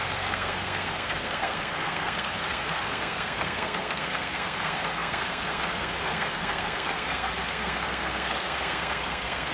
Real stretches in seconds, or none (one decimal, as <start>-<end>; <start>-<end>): none